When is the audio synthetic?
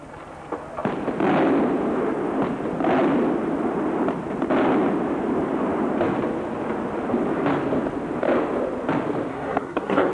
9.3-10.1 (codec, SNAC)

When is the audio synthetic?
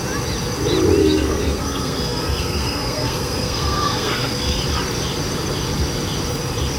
1.0-4.6 (codec, SNAC)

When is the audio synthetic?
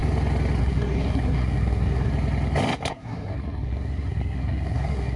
0.6-2.1 (codec, SNAC); 2.9-5.2